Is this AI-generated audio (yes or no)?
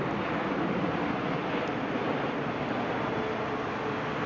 yes